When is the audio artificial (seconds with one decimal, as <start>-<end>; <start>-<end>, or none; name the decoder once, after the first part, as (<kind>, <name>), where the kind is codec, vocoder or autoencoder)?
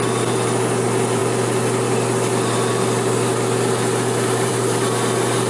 none